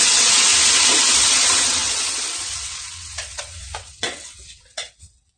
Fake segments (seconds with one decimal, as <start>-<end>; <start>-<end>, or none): 0.0-0.5; 1.1-5.4